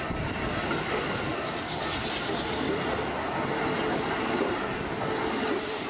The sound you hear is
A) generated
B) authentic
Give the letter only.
B